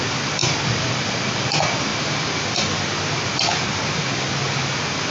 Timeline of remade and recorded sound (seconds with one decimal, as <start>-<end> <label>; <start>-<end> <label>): 0.0-5.1 recorded